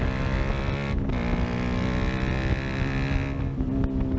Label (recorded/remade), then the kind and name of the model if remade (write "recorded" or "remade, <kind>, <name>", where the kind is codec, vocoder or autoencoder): recorded